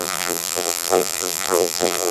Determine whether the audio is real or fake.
fake